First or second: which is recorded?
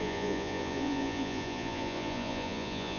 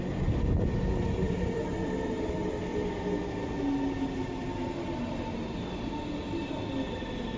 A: second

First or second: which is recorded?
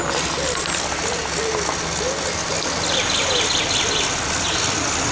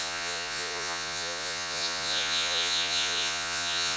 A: first